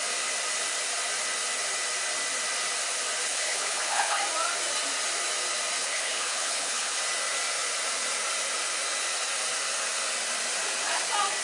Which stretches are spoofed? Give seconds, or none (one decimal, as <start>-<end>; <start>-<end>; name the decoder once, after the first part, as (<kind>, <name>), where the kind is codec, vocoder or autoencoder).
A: 3.2-4.2 (codec, HILCodec); 5.8-7.0